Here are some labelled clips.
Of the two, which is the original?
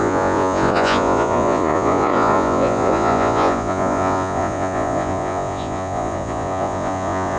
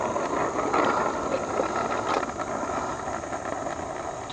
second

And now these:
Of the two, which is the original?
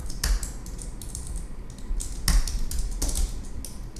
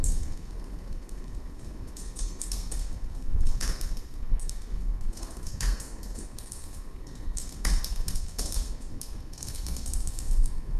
first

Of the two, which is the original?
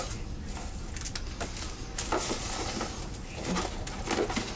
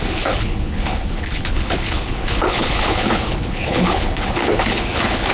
first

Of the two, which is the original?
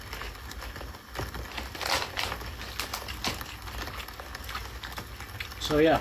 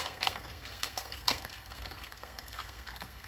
first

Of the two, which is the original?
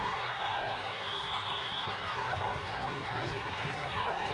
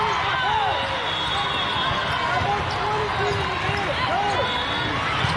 second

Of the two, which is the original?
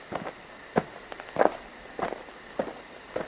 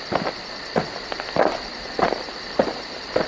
first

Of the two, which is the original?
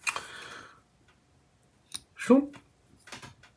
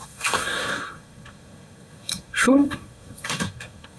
first